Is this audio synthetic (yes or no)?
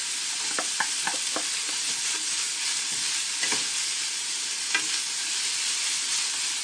no